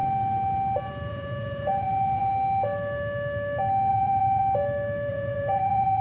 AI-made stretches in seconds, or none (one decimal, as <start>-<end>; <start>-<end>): 1.1-2.3; 3.9-4.4; 5.1-6.0